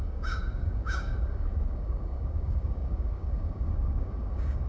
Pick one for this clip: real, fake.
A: fake